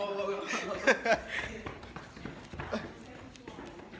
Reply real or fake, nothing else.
real